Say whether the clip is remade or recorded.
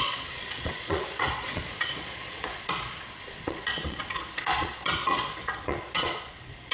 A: remade